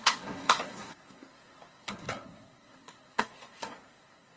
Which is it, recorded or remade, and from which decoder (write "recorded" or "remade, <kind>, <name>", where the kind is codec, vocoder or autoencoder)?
remade, codec, SNAC